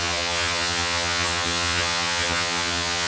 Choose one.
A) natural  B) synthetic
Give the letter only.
B